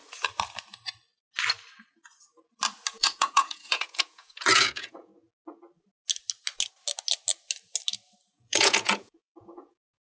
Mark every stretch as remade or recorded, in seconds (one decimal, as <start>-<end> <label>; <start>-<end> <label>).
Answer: 0.0-2.9 recorded; 2.9-5.1 remade; 5.1-8.3 recorded; 8.3-10.0 remade